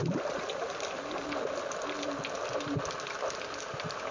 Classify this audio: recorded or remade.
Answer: recorded